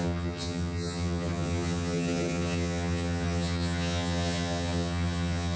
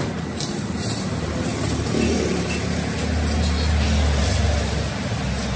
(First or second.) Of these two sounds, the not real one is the first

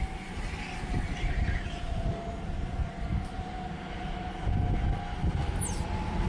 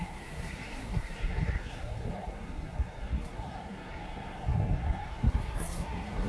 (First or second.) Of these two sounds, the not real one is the second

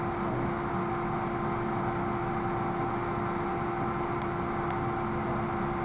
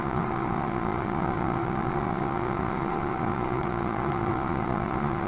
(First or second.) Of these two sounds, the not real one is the second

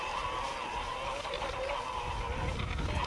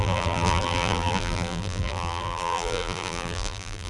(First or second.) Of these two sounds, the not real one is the second